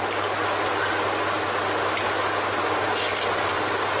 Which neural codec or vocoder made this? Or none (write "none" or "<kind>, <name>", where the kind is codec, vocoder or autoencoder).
none